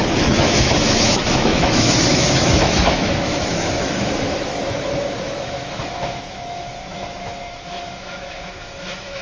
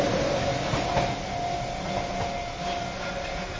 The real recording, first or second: second